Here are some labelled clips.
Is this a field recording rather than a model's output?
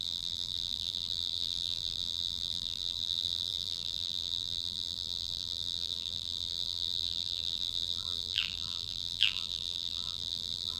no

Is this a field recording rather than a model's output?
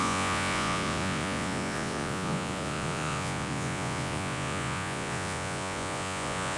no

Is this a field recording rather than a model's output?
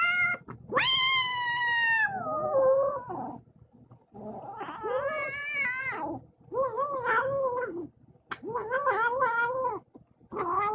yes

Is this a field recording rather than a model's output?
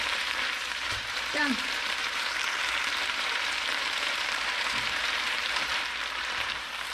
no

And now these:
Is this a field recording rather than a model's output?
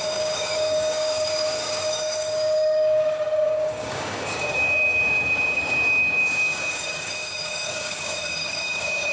no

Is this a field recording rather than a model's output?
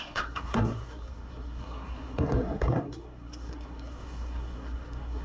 no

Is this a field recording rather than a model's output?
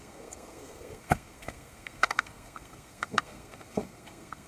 no